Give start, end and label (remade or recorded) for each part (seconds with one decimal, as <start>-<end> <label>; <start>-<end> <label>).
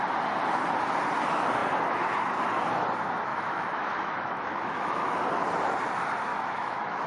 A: 0.0-3.3 recorded; 3.3-5.2 remade; 5.2-6.3 recorded; 6.3-7.1 remade